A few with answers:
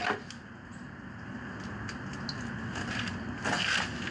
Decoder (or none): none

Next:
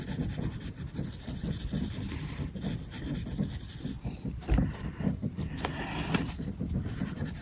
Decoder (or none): vocoder, BigVGAN v2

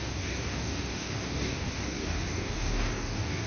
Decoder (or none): codec, DAC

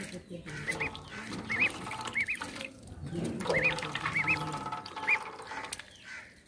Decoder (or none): none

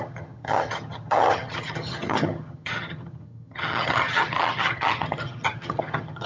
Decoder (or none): vocoder, HiFi-GAN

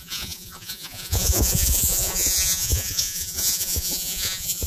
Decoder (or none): vocoder, Vocos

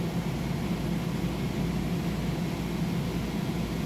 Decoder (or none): none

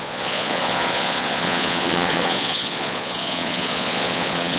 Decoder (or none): vocoder, Vocos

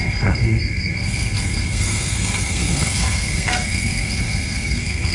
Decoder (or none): codec, SNAC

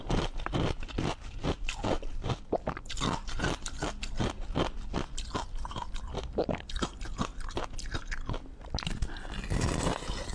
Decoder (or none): none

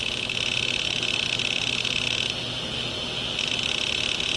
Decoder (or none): none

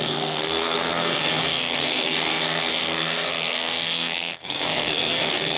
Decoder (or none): codec, SNAC